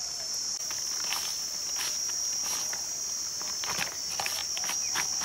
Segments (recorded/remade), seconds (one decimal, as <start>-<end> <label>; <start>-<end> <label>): 0.0-5.2 recorded